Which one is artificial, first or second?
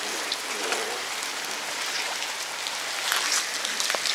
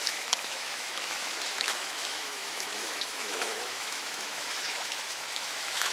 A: second